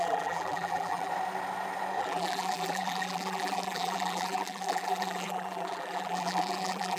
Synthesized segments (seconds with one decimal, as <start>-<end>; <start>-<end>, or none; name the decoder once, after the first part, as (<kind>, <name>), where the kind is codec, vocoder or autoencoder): 0.0-1.1 (vocoder, BigVGAN v2); 2.0-7.0